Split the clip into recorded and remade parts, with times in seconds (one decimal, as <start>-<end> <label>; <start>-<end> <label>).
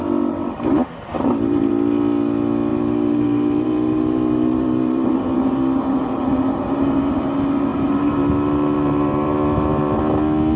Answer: 0.0-1.1 recorded; 1.1-1.7 remade; 1.7-2.7 recorded; 2.7-7.2 remade; 7.2-7.7 recorded; 7.7-10.0 remade; 10.0-10.6 recorded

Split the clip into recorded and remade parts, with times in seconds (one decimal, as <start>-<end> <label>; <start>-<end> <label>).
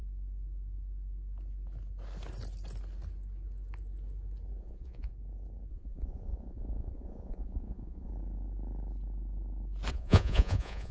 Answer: 0.0-4.6 recorded; 4.6-5.1 remade; 5.1-5.7 recorded; 5.7-8.1 remade; 8.1-9.9 recorded; 9.9-10.9 remade